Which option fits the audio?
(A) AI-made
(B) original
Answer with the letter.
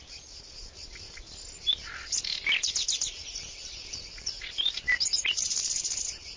B